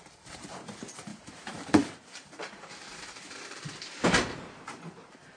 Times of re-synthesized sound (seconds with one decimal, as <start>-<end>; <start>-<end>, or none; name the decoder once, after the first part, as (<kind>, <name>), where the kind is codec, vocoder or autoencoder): 0.0-4.0 (vocoder, BigVGAN v2)